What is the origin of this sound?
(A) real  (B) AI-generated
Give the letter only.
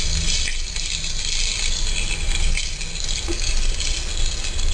A